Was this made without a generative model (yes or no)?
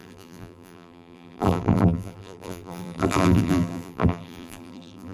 no